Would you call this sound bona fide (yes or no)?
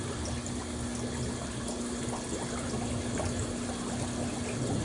yes